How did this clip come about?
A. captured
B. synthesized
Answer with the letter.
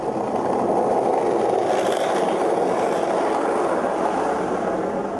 A